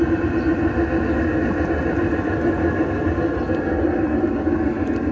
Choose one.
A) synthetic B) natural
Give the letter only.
B